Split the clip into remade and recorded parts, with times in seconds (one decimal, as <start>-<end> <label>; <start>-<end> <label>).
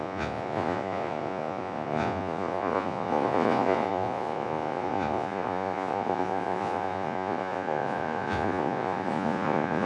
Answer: 0.0-9.9 remade